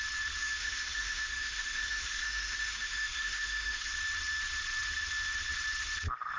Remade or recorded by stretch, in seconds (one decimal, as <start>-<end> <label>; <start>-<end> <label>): 0.0-0.4 recorded; 0.4-3.9 remade; 3.9-6.4 recorded